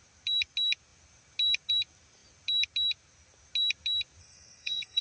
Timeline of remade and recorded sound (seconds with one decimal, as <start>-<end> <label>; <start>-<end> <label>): 0.0-4.2 recorded; 4.2-5.0 remade